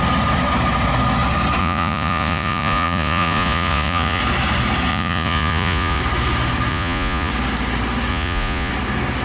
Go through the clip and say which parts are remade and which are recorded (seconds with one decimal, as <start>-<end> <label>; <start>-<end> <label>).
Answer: 0.0-1.6 recorded; 1.6-4.2 remade; 4.2-4.9 recorded; 4.9-6.0 remade; 6.0-6.7 recorded; 6.7-7.3 remade; 7.3-8.1 recorded; 8.1-8.7 remade; 8.7-9.2 recorded